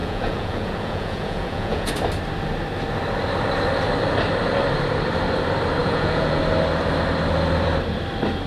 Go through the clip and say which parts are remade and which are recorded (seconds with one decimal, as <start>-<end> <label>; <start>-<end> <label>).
0.0-1.9 remade; 1.9-5.8 recorded; 5.8-6.4 remade; 6.4-8.5 recorded